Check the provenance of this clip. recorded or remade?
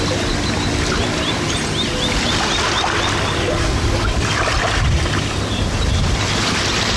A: remade